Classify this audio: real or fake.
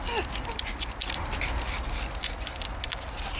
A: real